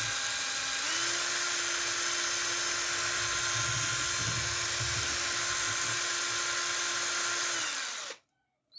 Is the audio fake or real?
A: real